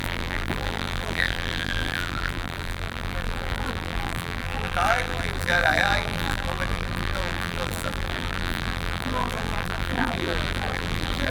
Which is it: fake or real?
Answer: fake